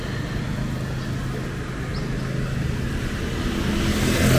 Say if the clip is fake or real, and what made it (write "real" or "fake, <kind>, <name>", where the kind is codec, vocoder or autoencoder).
real